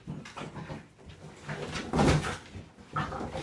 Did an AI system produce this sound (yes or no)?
no